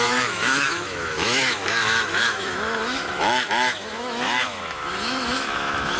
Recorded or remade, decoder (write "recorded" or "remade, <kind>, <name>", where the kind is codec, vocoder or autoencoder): remade, autoencoder, DAC-VAE